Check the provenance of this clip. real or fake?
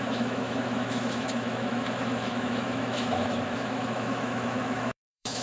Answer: fake